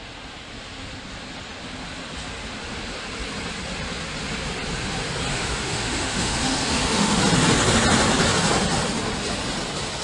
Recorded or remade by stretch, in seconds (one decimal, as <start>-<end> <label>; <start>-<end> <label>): 0.0-5.3 recorded; 5.3-7.2 remade; 7.2-10.0 recorded